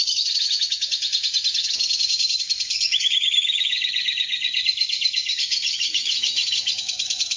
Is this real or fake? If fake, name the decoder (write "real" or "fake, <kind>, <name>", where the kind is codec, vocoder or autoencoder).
fake, autoencoder, DAC-VAE